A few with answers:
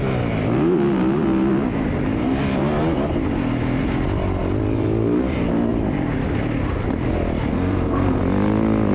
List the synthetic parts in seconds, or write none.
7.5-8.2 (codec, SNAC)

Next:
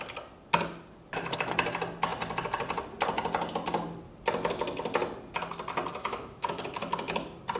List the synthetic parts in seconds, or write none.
6.0-6.6 (autoencoder, DAC-VAE)

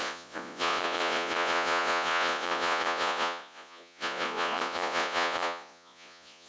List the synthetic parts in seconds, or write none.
0.0-6.5 (vocoder, Vocos)